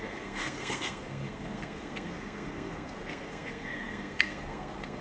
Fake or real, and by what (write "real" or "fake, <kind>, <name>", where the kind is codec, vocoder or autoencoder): fake, codec, SNAC